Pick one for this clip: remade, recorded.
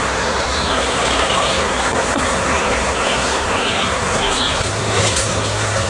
remade